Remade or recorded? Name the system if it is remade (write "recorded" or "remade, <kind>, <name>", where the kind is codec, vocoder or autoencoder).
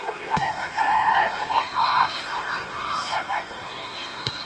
remade, codec, SNAC